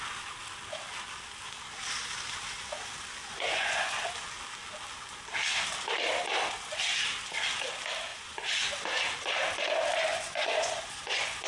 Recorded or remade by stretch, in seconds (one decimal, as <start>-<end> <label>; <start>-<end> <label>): 0.0-3.2 recorded; 3.2-4.1 remade; 4.1-8.1 recorded; 8.1-8.7 remade; 8.7-10.1 recorded; 10.1-11.5 remade